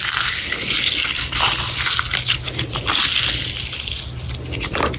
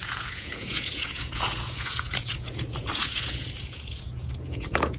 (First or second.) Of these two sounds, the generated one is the second